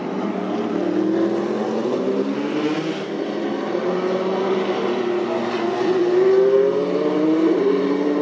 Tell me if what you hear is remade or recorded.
recorded